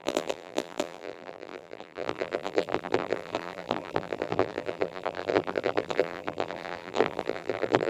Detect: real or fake fake